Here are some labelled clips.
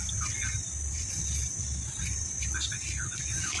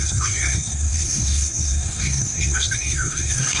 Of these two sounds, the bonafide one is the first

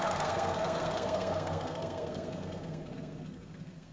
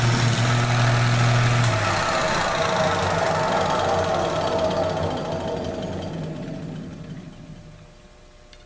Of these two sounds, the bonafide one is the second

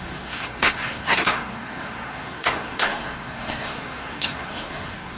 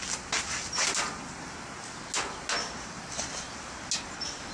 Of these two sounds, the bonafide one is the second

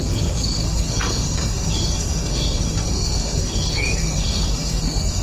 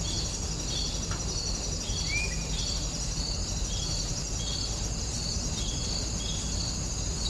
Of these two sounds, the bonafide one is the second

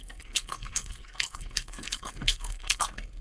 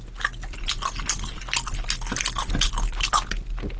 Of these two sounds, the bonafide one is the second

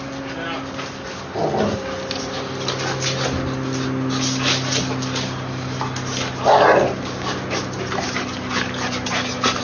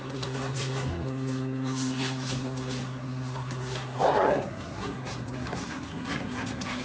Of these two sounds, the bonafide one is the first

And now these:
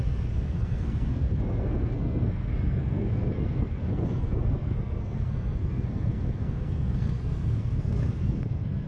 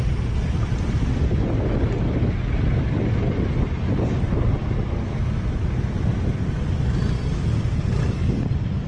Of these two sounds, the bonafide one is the second